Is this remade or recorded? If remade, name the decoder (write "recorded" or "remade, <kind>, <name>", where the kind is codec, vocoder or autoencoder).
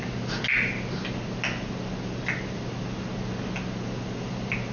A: recorded